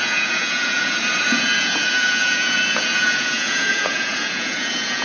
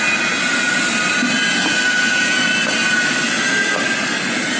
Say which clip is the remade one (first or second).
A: first